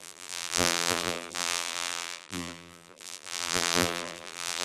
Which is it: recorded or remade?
remade